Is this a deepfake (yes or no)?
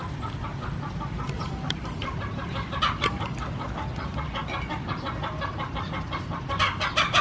no